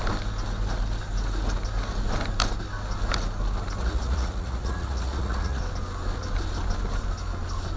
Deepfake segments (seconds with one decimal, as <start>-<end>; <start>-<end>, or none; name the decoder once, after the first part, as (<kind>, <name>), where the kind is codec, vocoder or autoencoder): 3.8-5.6 (vocoder, Vocos)